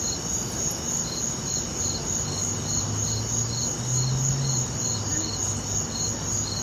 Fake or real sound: real